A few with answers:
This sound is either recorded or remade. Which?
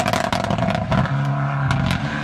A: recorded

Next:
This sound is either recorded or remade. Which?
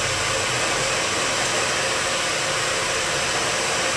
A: remade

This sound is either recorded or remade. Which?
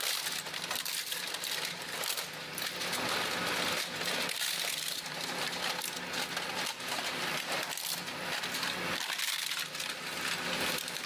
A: recorded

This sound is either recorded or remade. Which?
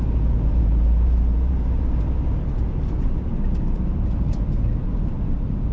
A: remade